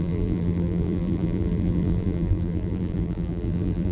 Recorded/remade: remade